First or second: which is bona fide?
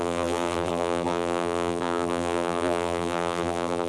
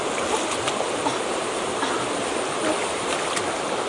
second